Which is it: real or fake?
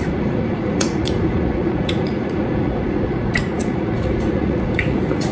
fake